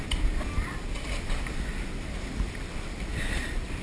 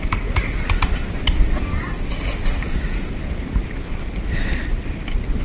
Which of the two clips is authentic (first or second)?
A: first